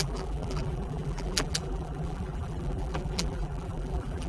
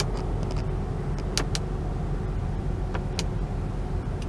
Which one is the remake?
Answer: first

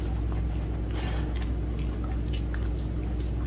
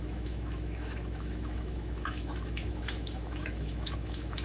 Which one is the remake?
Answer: second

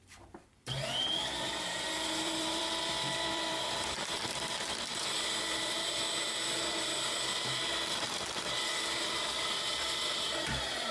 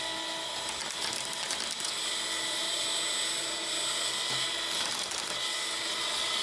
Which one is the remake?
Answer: first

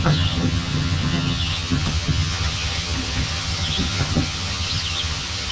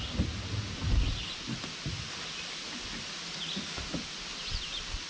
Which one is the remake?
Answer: first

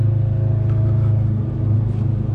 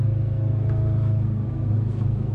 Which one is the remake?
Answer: second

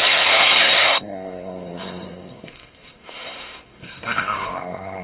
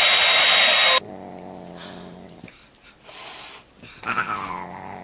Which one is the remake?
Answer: first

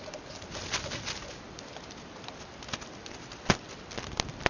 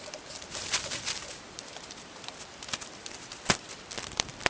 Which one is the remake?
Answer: second